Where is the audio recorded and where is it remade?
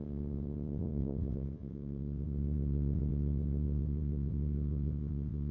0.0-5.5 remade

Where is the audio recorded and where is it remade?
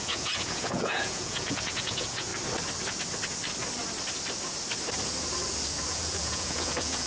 0.0-2.3 remade; 2.3-5.9 recorded; 5.9-7.1 remade